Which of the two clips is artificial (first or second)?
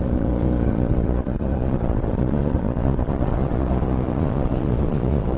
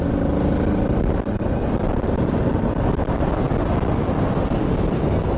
first